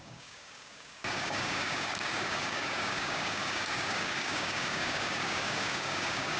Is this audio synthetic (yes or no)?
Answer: yes